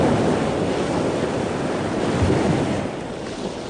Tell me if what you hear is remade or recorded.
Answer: recorded